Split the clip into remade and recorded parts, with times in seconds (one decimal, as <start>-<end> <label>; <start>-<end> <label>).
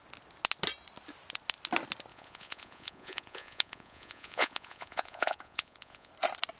0.0-2.1 recorded; 2.1-6.1 remade; 6.1-6.6 recorded